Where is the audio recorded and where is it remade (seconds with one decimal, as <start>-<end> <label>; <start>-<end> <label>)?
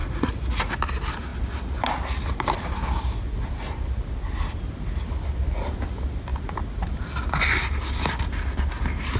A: 0.0-0.7 remade; 0.7-9.2 recorded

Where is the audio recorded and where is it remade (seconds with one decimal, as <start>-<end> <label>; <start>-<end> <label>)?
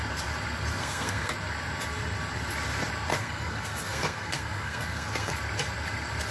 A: 0.0-0.8 recorded; 0.8-1.3 remade; 1.3-3.1 recorded; 3.1-5.3 remade; 5.3-6.3 recorded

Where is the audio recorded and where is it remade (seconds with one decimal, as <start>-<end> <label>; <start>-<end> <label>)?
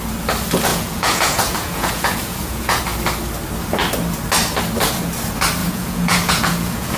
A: 0.0-0.7 recorded; 0.7-2.8 remade; 2.8-5.6 recorded; 5.6-7.0 remade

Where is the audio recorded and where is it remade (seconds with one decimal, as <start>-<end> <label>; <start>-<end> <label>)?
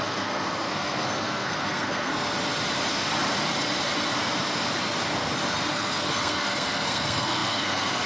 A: 0.0-2.1 remade; 2.1-5.7 recorded; 5.7-8.1 remade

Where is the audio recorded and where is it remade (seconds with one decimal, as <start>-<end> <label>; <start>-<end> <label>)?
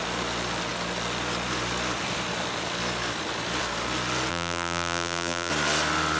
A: 0.0-4.3 recorded; 4.3-5.5 remade; 5.5-6.2 recorded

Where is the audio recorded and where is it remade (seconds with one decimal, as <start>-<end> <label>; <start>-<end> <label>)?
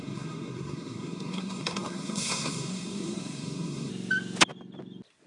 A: 0.0-3.9 remade; 3.9-5.3 recorded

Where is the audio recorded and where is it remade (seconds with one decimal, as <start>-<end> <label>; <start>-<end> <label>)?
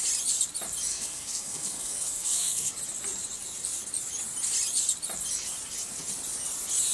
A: 0.0-0.9 recorded; 0.9-2.7 remade; 2.7-6.9 recorded